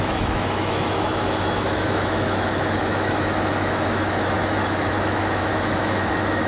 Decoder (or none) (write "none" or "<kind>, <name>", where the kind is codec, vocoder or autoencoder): autoencoder, DAC-VAE